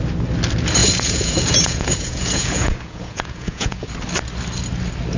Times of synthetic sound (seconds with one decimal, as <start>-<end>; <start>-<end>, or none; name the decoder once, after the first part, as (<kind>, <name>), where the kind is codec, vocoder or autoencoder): 0.8-3.9 (vocoder, Vocos)